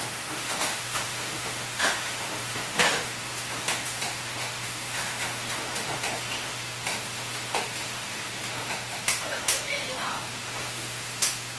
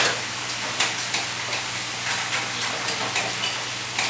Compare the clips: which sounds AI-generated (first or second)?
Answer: first